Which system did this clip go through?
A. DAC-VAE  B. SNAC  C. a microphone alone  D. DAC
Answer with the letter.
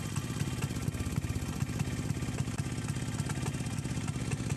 C